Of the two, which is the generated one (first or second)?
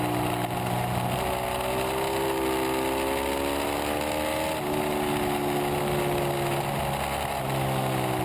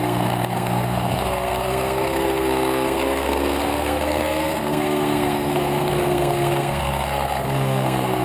second